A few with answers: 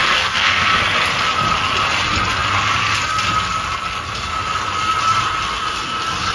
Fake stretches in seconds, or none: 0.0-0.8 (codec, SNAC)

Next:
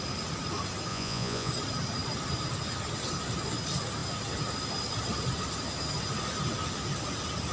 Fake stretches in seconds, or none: 0.9-1.5 (vocoder, Vocos)

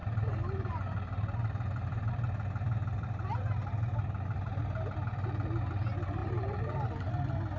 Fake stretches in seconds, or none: 0.0-4.6 (vocoder, BigVGAN v2); 6.2-7.1

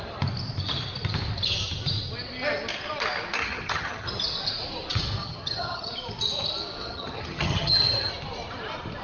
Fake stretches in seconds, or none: 3.4-4.2 (vocoder, HiFi-GAN); 5.2-5.9; 6.8-8.1

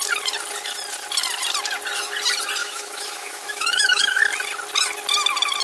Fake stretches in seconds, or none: 2.6-4.2 (autoencoder, DAC-VAE)